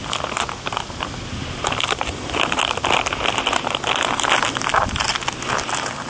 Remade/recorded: recorded